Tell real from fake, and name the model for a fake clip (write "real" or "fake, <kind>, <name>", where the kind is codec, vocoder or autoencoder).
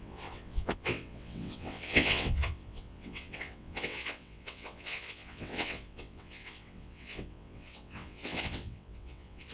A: fake, vocoder, WaveNeXt